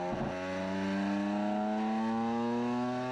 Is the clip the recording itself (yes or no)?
yes